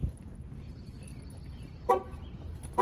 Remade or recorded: recorded